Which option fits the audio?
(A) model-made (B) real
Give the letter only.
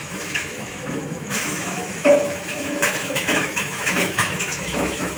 A